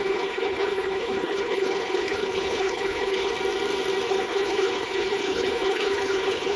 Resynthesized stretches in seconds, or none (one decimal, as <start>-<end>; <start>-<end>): 0.0-3.3; 4.1-6.6